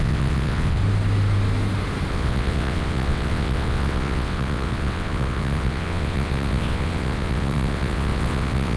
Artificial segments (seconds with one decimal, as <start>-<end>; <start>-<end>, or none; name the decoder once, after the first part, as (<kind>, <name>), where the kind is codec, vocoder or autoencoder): 0.0-0.8 (vocoder, WaveNeXt); 2.1-8.8